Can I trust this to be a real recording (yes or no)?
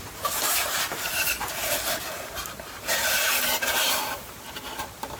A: no